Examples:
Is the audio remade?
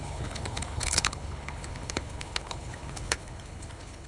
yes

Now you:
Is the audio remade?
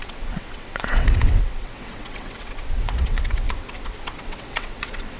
yes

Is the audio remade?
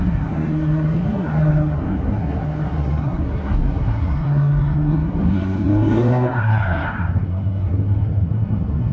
yes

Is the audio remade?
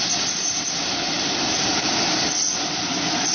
no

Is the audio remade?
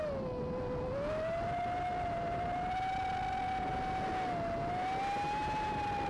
no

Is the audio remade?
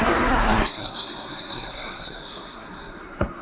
yes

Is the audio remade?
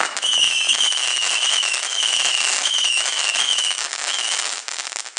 yes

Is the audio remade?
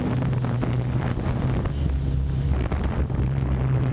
no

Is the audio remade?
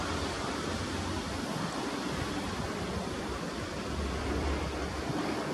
yes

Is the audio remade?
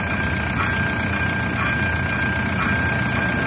no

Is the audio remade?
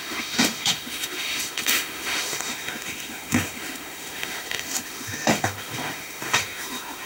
yes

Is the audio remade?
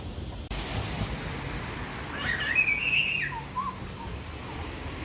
no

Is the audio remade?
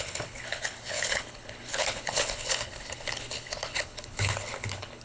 yes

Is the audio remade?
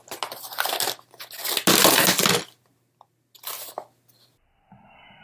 no